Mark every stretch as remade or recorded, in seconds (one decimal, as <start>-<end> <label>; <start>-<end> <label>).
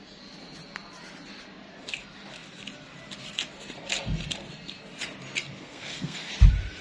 0.0-5.6 recorded; 5.6-6.3 remade; 6.3-6.8 recorded